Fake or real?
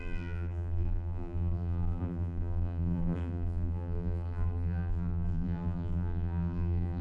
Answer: fake